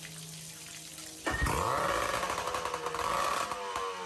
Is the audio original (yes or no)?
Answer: yes